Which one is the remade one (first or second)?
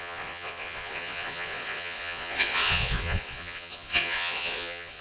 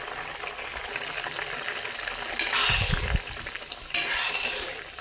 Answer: first